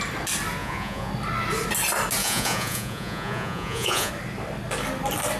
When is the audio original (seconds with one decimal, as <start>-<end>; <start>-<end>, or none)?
0.0-0.6; 1.1-2.2; 4.1-5.4